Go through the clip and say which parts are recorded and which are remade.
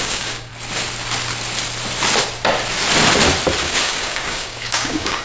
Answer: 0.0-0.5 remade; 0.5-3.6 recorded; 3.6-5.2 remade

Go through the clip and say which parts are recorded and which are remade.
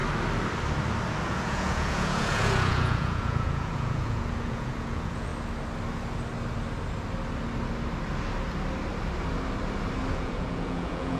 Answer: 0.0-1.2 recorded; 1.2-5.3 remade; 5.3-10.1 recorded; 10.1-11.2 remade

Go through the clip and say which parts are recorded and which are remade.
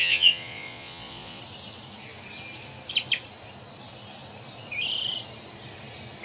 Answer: 0.0-1.4 remade; 1.4-6.2 recorded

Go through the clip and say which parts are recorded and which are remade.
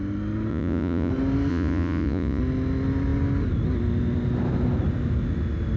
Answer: 0.0-0.5 recorded; 0.5-1.1 remade; 1.1-1.5 recorded; 1.5-2.4 remade; 2.4-5.8 recorded